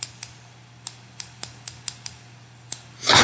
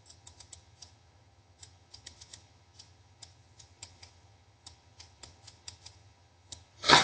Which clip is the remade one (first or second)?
second